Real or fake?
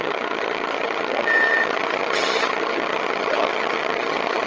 fake